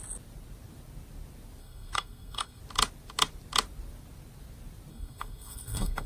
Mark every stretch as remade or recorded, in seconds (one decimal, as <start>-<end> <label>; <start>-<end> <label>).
0.0-1.6 recorded; 1.6-2.6 remade; 2.6-4.9 recorded; 4.9-6.1 remade